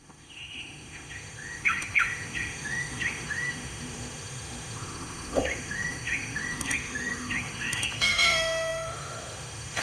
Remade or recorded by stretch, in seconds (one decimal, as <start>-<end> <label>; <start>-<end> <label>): 0.0-9.8 remade